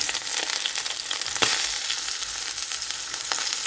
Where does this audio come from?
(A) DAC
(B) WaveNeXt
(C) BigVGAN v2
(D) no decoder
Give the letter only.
C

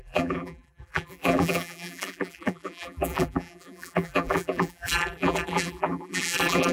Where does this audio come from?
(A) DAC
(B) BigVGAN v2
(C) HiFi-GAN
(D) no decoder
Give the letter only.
B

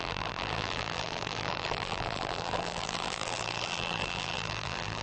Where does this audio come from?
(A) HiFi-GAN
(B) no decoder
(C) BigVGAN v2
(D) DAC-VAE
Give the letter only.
C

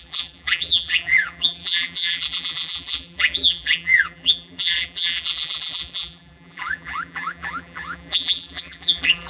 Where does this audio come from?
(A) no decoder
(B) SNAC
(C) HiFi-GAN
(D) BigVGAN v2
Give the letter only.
D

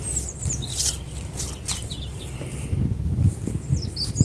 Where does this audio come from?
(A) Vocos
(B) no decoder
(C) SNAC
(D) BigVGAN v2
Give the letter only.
B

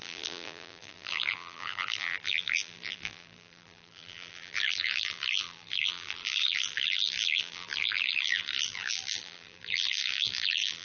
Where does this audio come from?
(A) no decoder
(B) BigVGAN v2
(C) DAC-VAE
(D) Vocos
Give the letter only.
B